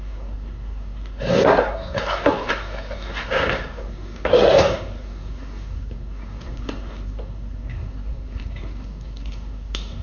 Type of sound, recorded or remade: remade